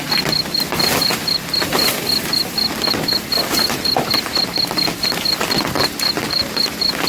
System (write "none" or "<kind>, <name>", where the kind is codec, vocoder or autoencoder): none